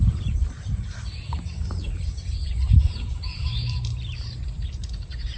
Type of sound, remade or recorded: remade